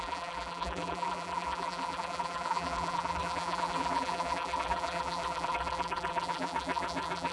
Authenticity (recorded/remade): remade